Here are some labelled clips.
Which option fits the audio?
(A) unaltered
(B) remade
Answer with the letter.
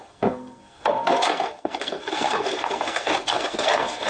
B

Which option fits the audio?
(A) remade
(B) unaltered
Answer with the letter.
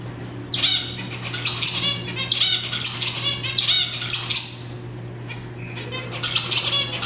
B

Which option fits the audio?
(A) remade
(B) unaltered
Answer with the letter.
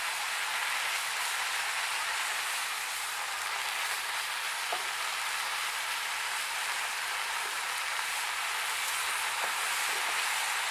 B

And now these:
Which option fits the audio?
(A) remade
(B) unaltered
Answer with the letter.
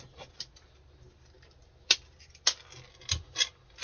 B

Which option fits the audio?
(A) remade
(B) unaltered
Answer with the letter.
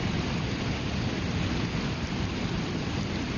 B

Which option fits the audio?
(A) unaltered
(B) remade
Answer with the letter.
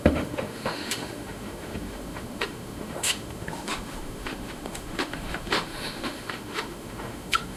B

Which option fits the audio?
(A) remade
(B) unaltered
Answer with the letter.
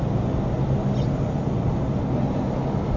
B